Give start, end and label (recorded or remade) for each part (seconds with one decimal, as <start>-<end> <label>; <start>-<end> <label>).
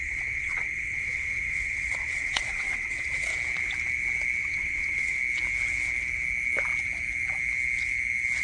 0.0-3.3 remade; 3.3-4.4 recorded; 4.4-5.2 remade; 5.2-8.4 recorded